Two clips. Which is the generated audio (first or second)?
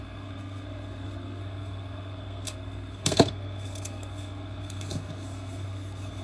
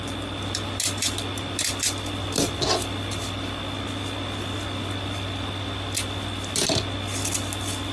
first